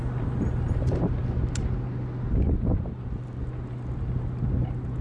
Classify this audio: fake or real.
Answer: real